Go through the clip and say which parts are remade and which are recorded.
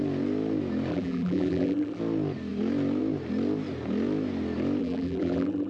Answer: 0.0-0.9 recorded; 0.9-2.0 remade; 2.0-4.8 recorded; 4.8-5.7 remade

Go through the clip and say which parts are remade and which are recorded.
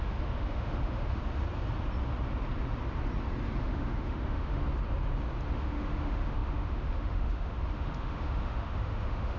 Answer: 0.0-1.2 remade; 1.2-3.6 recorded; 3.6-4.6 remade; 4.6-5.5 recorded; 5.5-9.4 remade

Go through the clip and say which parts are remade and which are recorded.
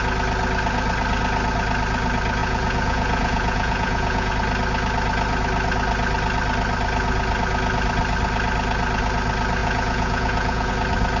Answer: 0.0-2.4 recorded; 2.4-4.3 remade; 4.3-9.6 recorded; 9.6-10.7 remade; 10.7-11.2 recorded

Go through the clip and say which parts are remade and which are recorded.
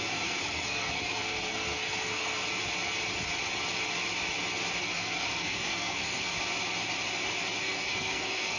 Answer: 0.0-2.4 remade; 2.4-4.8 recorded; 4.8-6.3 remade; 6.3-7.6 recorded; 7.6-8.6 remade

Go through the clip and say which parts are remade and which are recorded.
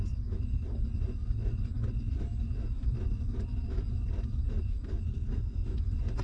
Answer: 0.0-5.1 recorded; 5.1-5.7 remade; 5.7-6.2 recorded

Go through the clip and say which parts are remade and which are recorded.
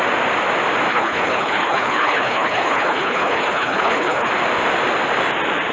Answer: 0.0-0.9 recorded; 0.9-4.3 remade; 4.3-5.7 recorded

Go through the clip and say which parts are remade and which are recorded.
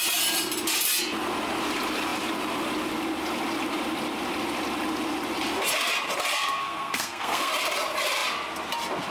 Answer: 0.0-6.3 recorded; 6.3-7.5 remade; 7.5-9.1 recorded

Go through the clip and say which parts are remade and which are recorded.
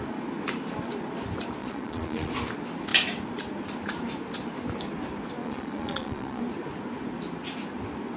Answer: 0.0-1.6 recorded; 1.6-2.3 remade; 2.3-5.4 recorded; 5.4-6.4 remade; 6.4-8.2 recorded